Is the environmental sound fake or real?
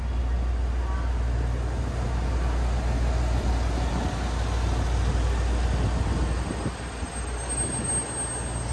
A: real